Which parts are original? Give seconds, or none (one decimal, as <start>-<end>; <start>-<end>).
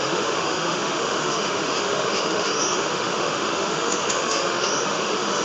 none